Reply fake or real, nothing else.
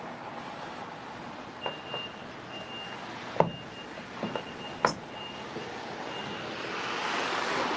real